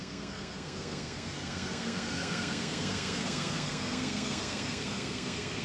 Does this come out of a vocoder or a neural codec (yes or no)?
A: yes